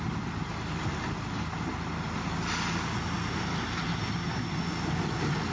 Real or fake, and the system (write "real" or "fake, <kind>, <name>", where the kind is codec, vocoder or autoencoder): real